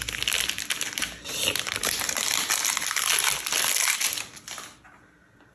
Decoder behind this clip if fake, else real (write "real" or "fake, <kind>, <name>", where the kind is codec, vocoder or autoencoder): real